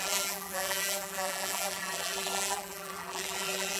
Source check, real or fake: fake